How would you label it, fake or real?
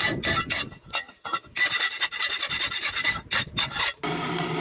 real